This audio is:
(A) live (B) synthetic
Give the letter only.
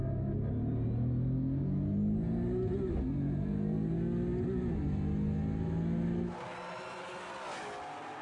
A